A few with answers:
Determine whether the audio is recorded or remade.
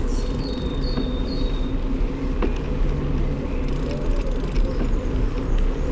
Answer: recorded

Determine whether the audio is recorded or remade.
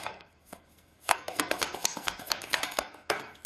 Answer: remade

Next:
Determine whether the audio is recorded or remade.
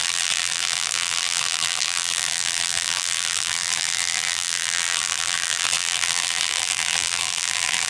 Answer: remade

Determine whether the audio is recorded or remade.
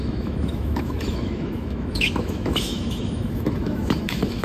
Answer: remade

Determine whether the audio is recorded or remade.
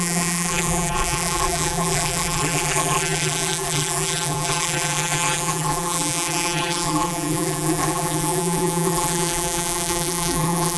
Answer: remade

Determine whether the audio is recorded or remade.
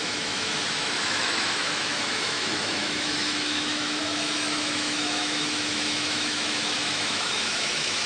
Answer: remade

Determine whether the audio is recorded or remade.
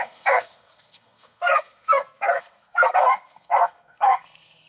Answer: remade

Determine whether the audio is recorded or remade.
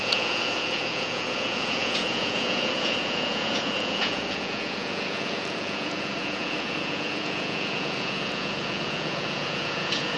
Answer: remade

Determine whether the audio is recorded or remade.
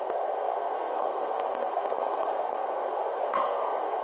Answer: remade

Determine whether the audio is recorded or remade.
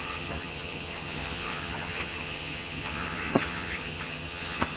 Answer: remade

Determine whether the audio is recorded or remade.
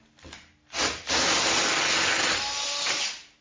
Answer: recorded